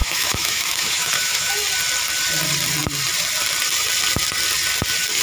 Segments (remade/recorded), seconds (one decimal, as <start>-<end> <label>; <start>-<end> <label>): 0.0-1.5 remade; 1.5-5.2 recorded